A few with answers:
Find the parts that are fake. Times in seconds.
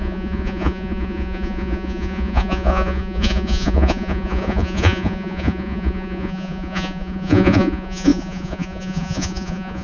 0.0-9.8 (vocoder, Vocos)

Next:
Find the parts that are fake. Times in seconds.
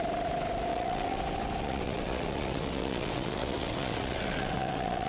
0.7-1.2 (vocoder, WaveNeXt); 1.6-5.1